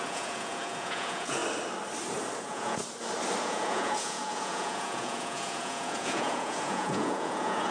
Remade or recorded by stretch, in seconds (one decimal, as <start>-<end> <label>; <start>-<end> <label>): 0.0-1.4 remade; 1.4-2.4 recorded; 2.4-2.8 remade; 2.8-3.4 recorded; 3.4-7.7 remade